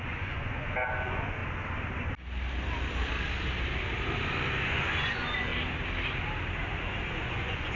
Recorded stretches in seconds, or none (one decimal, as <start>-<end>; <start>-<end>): 1.4-4.6; 5.5-7.1